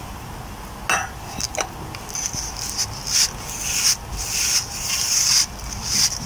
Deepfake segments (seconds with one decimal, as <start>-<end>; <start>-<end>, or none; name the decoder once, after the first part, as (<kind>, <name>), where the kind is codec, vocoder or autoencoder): none